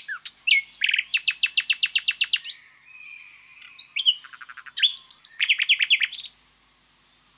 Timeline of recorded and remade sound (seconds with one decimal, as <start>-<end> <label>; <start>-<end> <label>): 0.0-4.9 recorded; 4.9-5.5 remade; 5.5-7.4 recorded